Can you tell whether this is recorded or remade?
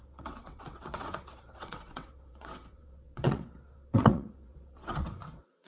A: remade